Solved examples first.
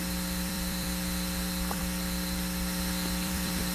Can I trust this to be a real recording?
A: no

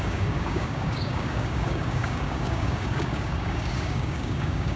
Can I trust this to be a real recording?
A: no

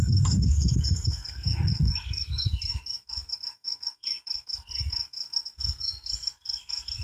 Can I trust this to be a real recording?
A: no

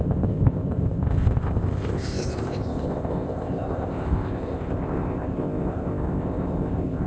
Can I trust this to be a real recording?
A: no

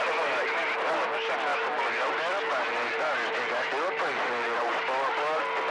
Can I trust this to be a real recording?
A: yes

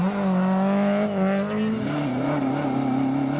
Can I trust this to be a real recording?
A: yes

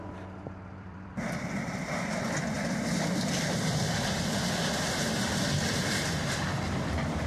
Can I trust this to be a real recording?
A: no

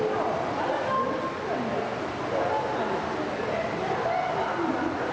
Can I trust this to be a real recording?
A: yes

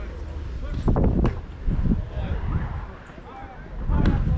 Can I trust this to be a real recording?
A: yes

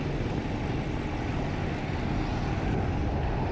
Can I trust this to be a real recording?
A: yes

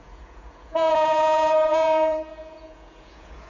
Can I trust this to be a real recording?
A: no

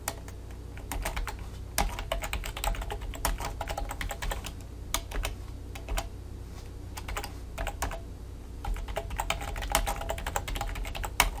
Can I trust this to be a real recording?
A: yes